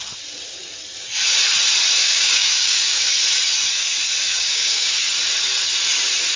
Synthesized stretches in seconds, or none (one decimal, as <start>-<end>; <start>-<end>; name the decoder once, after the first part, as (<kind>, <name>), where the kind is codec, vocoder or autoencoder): 2.0-3.1 (codec, DAC); 4.3-4.9

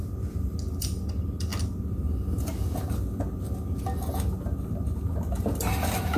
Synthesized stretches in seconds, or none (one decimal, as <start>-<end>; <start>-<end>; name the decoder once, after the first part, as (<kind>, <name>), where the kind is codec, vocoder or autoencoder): none

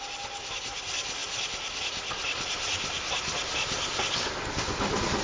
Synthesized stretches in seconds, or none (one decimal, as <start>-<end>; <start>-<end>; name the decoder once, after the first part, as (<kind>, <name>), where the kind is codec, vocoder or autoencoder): none

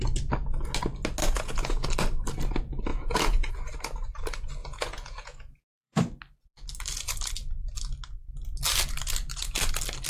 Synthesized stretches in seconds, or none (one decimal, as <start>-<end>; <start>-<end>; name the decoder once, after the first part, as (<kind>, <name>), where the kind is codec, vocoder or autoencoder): 1.2-1.9 (vocoder, Vocos); 2.9-3.5; 4.6-6.0